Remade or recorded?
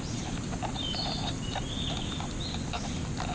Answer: recorded